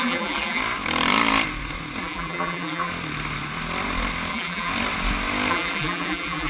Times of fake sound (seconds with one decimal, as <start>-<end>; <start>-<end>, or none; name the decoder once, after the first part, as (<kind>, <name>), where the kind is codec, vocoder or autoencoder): 0.0-0.6 (vocoder, BigVGAN v2); 2.0-2.9; 4.3-4.7; 5.5-6.5

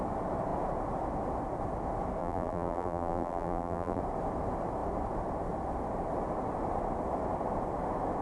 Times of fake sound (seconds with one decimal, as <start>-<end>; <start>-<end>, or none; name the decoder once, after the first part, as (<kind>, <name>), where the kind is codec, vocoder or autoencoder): 2.2-4.0 (vocoder, BigVGAN v2)

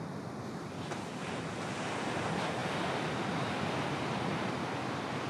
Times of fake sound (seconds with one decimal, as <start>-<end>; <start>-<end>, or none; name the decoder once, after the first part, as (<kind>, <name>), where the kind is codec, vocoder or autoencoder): 2.6-4.3 (vocoder, BigVGAN v2)

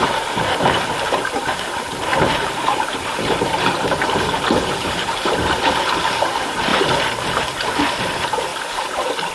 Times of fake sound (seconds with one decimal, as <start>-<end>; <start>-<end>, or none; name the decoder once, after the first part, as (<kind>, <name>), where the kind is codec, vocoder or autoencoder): 2.1-5.3 (vocoder, BigVGAN v2)

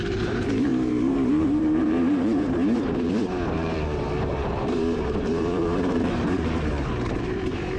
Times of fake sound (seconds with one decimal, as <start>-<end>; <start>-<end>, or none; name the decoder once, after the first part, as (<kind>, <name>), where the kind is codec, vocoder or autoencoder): 0.0-7.8 (vocoder, BigVGAN v2)

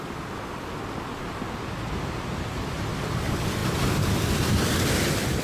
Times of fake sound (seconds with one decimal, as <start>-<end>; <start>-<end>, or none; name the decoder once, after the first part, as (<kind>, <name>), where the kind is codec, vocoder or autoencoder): none

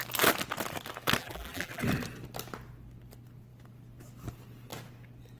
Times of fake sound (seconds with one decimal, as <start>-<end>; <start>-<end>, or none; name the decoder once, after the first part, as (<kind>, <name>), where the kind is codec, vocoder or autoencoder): 1.2-1.8 (vocoder, BigVGAN v2)

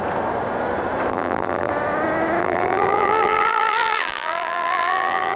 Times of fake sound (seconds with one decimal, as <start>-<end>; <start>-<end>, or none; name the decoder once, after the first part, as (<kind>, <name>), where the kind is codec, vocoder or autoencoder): 1.1-1.7 (vocoder, BigVGAN v2); 2.4-5.4